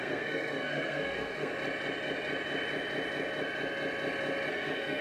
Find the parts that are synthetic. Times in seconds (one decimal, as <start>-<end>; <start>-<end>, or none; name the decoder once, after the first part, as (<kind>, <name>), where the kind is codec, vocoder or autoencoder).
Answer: 0.0-1.5 (codec, SNAC); 4.5-5.0